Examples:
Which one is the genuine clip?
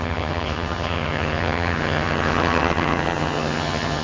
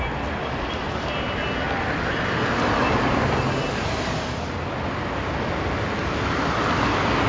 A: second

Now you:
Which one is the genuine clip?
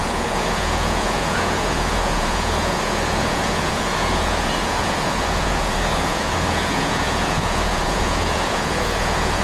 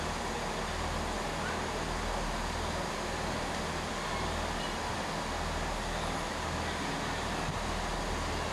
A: second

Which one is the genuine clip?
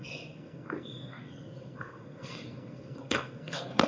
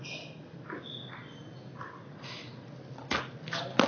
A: second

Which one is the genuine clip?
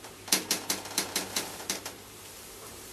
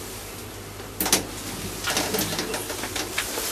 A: second